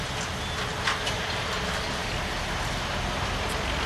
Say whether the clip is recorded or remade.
recorded